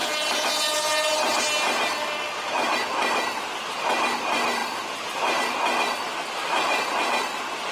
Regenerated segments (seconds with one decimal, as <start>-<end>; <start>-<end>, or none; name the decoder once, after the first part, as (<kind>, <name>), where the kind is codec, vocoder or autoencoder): none